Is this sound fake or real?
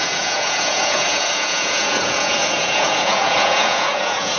fake